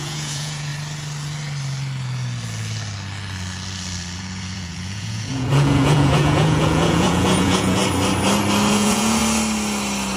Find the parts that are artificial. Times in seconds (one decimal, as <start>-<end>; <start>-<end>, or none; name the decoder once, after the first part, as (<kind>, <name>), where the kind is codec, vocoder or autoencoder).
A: 0.0-0.7 (vocoder, Vocos); 4.2-7.8; 8.7-9.2